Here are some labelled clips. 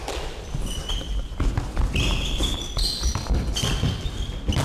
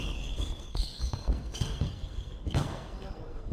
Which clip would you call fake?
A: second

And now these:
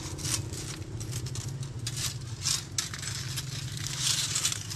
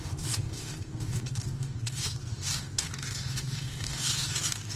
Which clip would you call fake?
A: second